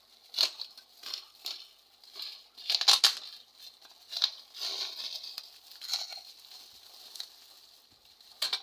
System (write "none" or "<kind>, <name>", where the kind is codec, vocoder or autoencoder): none